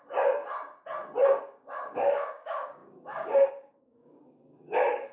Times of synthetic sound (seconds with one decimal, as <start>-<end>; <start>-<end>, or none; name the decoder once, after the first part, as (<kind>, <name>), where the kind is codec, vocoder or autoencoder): 0.0-0.4 (codec, DAC); 1.4-5.1